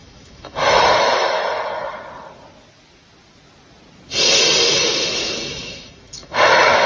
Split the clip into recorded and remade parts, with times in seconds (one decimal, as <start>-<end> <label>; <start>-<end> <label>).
0.0-1.4 remade; 1.4-4.7 recorded; 4.7-6.9 remade